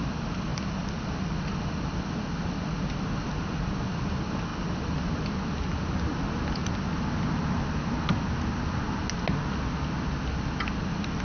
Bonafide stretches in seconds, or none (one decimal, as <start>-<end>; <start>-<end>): 0.0-0.5; 2.1-4.5; 5.1-11.2